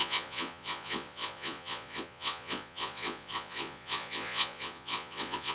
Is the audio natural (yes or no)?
no